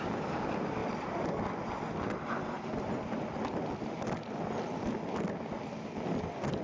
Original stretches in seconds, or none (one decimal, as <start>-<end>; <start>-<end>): 0.0-6.6